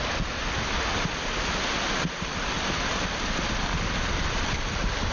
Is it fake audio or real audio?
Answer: real